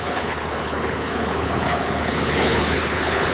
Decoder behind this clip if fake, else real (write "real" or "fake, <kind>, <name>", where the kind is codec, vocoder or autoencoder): fake, codec, HILCodec